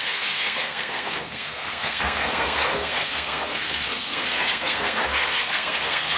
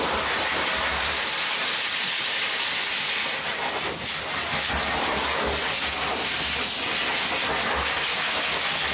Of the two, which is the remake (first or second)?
first